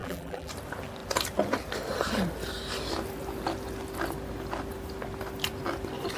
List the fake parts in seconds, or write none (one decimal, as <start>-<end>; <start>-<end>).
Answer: 0.0-0.5